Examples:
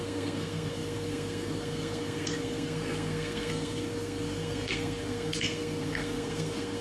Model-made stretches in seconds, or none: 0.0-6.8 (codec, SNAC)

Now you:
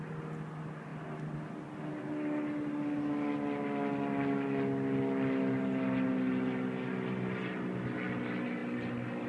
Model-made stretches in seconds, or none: none

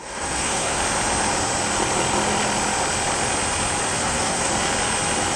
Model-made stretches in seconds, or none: 0.0-0.8 (codec, SNAC); 4.0-4.5

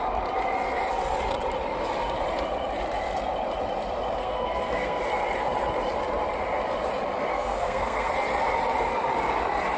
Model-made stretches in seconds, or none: 4.2-5.0 (codec, SNAC); 7.3-8.1

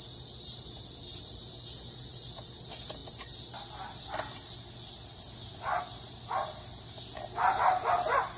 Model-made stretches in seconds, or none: none

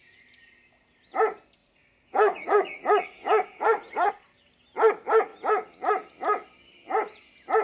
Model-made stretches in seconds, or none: 1.6-4.1 (vocoder, Vocos)

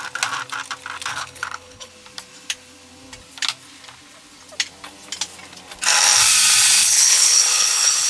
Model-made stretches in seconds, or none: 1.1-1.9 (codec, HILCodec); 6.8-8.1

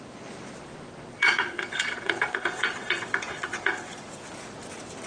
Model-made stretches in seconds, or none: 1.1-4.1 (vocoder, Vocos)